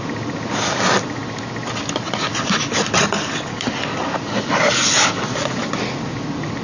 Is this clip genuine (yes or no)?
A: yes